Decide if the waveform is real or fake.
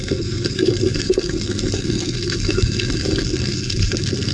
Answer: fake